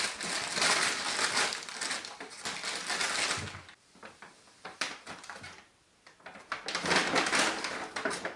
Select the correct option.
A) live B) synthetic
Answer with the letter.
A